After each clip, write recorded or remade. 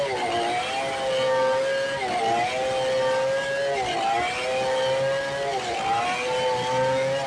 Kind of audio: recorded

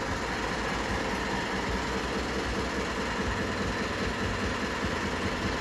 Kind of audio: recorded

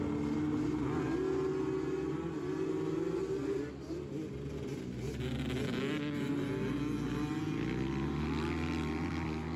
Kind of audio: recorded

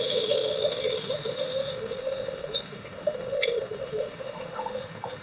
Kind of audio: remade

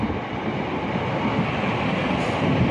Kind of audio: recorded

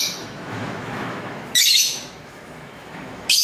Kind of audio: remade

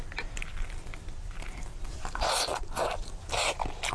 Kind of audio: recorded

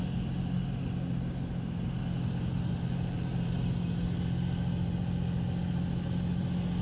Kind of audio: recorded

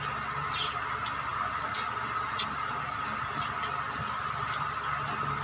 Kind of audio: recorded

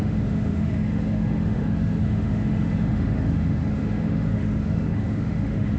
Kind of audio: remade